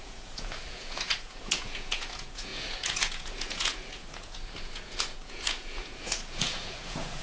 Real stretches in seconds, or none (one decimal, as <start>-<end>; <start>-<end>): none

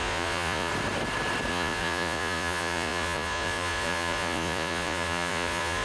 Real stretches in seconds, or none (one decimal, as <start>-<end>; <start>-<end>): 0.7-1.5